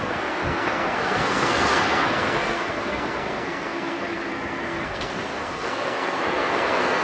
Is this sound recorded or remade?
remade